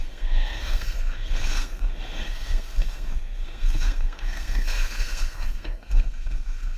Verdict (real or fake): fake